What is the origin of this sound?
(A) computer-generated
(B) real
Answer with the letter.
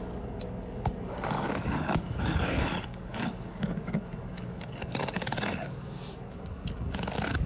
A